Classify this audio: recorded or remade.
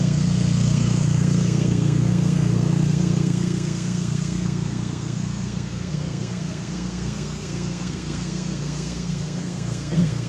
remade